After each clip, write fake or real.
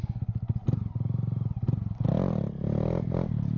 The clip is real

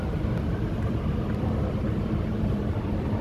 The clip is fake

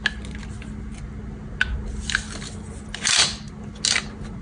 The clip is real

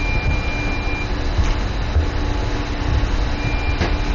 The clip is real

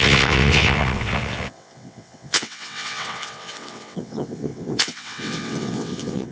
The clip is fake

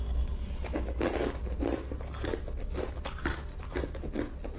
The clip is real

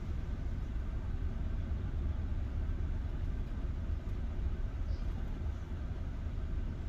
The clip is fake